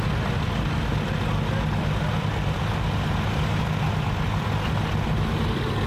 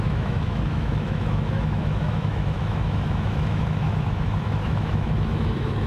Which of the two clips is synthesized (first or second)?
second